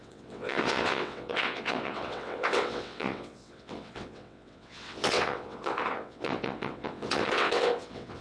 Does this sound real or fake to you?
fake